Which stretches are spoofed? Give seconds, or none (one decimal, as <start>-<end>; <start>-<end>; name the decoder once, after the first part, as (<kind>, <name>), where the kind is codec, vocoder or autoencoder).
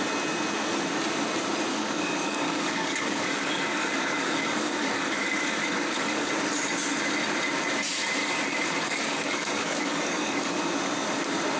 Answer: 1.7-6.3 (codec, DAC); 8.2-10.6